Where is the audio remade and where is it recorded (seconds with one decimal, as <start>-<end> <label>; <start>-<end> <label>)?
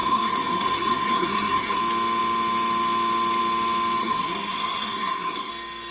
0.0-1.8 remade; 1.8-4.0 recorded; 4.0-5.5 remade; 5.5-5.9 recorded